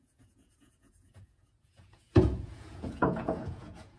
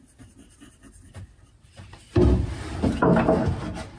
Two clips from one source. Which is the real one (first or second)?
second